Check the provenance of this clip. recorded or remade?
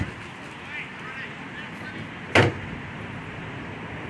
recorded